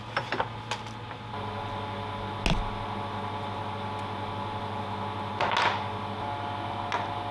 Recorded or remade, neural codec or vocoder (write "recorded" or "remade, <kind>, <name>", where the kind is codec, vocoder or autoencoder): recorded